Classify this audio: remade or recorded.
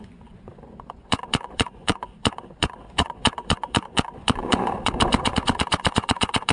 remade